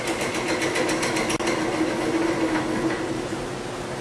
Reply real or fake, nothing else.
real